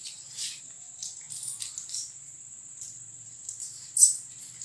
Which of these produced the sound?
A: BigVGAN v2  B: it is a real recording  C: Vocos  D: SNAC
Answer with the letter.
B